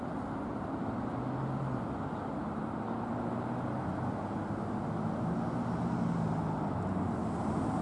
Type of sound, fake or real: real